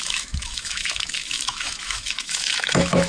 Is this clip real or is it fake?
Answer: fake